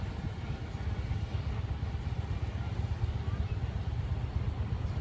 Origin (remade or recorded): recorded